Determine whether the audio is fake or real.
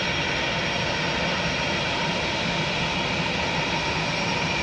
real